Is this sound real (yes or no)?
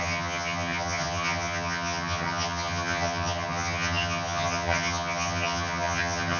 no